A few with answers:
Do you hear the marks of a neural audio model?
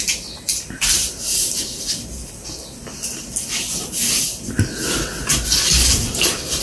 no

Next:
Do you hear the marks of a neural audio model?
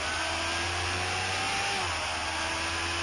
no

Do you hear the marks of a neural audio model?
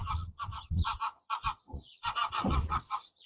yes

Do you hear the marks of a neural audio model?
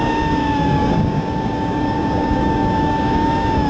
yes